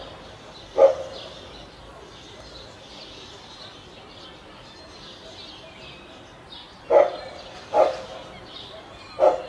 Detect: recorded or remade recorded